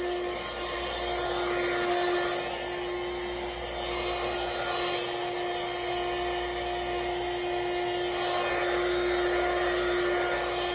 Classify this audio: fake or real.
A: real